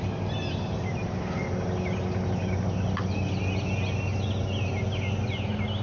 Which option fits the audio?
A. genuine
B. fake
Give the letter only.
A